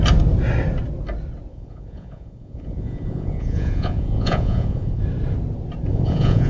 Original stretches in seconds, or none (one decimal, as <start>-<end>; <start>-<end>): 0.0-1.5; 5.0-5.9